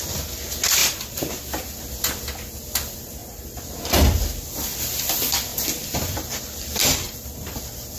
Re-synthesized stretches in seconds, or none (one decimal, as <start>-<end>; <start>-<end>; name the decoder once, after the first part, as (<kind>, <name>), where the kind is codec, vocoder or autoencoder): 0.8-1.8 (vocoder, BigVGAN v2); 3.2-3.8; 5.5-8.0